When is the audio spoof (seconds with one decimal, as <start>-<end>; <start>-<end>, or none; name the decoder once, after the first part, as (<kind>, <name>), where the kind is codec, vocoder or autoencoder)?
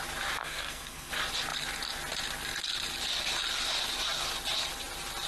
0.4-1.1 (codec, SNAC)